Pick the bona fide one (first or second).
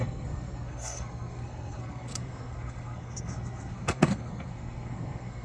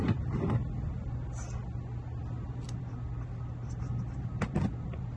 second